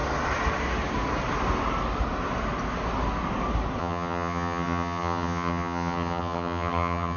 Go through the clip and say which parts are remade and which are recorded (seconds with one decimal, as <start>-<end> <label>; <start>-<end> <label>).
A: 0.0-3.8 recorded; 3.8-7.2 remade